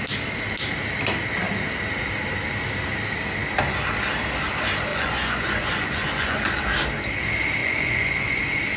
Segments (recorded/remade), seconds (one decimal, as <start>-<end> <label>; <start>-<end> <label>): 0.0-4.9 recorded; 4.9-6.6 remade; 6.6-7.6 recorded; 7.6-8.4 remade; 8.4-8.8 recorded